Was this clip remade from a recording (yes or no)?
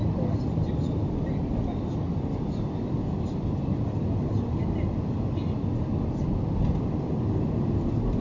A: no